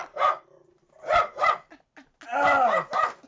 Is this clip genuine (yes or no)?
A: yes